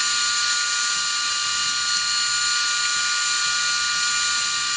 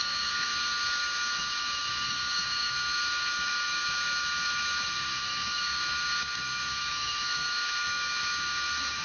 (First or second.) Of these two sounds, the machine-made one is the second